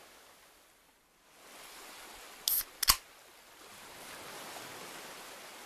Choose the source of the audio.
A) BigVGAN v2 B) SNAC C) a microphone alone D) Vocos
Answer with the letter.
C